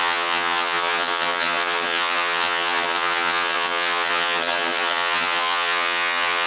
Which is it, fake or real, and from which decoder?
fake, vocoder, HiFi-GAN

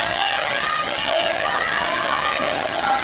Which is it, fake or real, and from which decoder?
fake, vocoder, HiFi-GAN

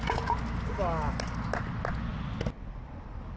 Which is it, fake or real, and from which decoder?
real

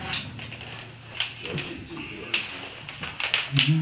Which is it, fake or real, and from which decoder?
real